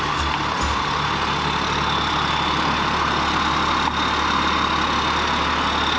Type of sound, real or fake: real